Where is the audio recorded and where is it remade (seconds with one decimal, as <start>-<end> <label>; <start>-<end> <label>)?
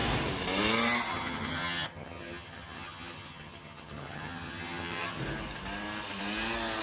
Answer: 0.0-1.1 recorded; 1.1-5.2 remade; 5.2-6.8 recorded